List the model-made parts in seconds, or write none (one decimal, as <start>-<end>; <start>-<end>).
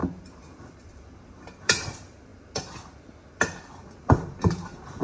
none